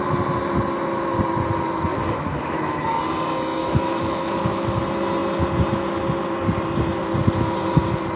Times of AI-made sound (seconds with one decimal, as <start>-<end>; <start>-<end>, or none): 1.9-3.0; 3.6-4.8